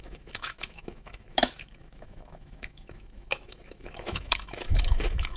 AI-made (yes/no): yes